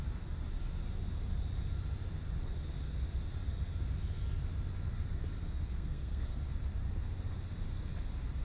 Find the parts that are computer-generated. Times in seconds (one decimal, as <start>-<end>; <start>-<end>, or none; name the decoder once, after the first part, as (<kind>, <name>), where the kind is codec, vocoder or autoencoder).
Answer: 5.7-6.4 (codec, SNAC)